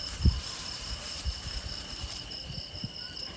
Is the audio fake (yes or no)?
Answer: yes